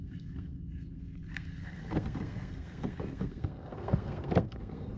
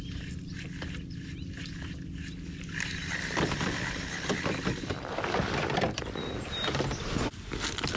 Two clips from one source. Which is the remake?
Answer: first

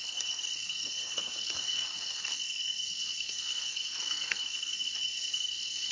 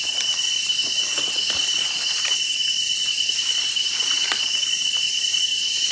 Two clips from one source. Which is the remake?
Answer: first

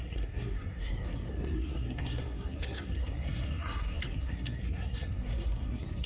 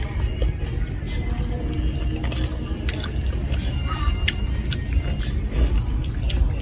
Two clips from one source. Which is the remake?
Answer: first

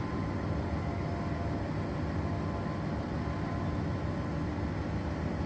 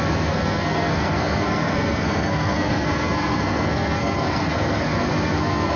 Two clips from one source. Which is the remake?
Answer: second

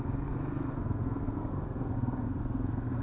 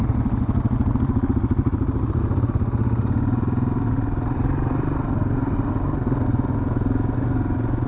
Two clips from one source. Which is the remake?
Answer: first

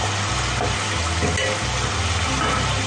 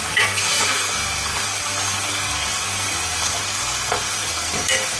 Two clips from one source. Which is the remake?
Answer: second